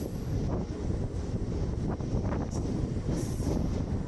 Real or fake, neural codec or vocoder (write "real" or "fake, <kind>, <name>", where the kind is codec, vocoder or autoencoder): real